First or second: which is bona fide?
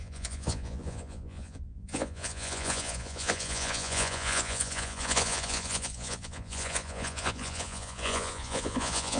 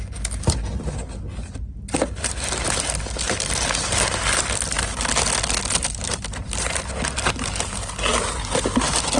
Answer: second